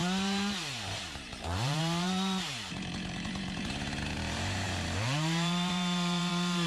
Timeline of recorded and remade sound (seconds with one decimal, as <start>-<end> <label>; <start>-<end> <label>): 0.0-6.7 remade